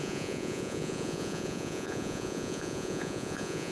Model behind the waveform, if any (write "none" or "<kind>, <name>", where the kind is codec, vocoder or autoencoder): vocoder, Vocos